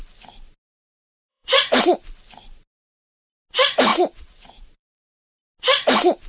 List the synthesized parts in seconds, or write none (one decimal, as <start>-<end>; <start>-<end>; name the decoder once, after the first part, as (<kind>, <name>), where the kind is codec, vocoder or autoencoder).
1.3-1.8 (vocoder, Vocos); 3.9-5.0